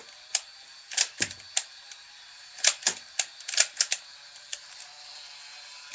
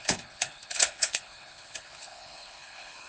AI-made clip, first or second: second